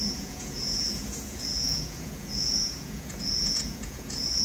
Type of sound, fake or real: fake